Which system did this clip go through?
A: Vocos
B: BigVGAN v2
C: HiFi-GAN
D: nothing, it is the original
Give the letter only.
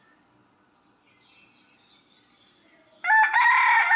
D